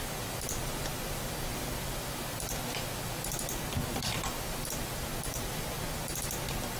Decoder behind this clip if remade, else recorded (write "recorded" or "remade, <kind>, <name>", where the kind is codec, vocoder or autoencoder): remade, vocoder, BigVGAN v2